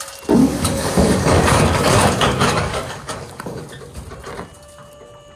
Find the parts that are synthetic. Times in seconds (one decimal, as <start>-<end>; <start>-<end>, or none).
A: 0.4-3.6